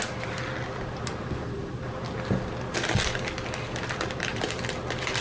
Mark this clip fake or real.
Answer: real